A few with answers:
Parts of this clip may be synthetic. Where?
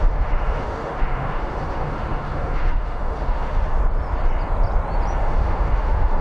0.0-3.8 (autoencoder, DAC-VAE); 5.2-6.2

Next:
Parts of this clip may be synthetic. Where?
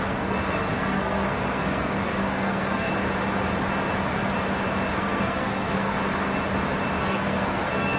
0.0-2.9 (codec, SNAC); 4.9-5.9; 7.0-8.0